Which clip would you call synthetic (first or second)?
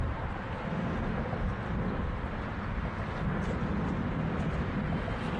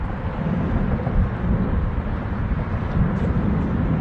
second